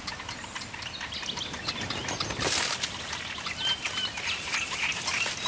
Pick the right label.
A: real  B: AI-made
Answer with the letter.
A